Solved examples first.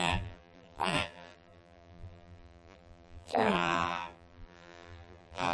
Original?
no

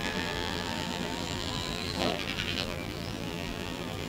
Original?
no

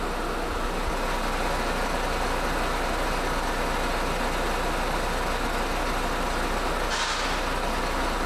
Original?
yes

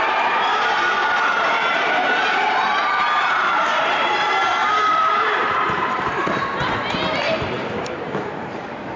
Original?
no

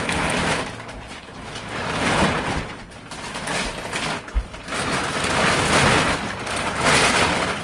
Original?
yes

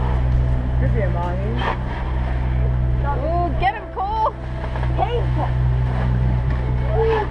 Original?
yes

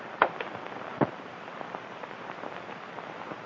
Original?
no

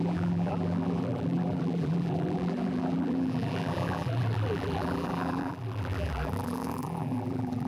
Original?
no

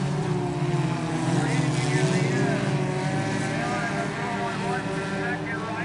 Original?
yes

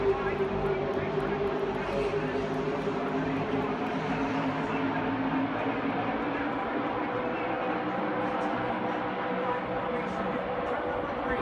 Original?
yes